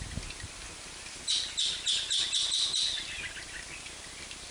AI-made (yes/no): no